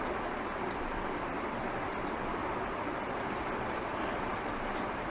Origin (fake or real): fake